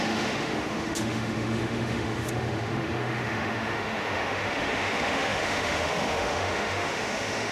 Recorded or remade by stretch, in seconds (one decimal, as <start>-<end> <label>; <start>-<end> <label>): 0.0-7.5 remade